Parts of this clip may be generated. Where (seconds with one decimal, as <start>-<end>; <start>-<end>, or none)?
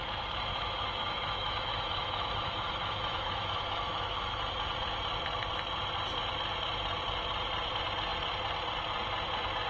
0.5-4.4